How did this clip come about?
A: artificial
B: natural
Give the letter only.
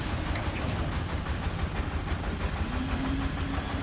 B